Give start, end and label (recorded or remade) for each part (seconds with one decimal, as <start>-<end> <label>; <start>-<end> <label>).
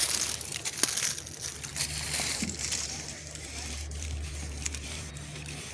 0.0-1.7 recorded; 1.7-5.1 remade; 5.1-5.7 recorded